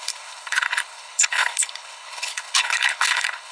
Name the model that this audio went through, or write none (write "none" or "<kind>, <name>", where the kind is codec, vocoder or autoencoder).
codec, HILCodec